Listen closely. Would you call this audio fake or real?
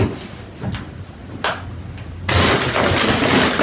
real